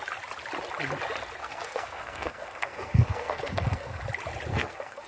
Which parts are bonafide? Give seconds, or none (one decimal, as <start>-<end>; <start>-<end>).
0.0-1.4; 4.0-4.5